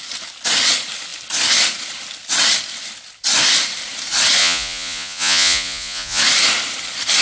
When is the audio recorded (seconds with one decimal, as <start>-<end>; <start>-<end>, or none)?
0.0-4.4; 6.2-7.2